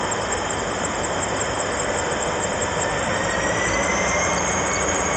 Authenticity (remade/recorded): remade